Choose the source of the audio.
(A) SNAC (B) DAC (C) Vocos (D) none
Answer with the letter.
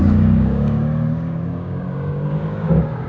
B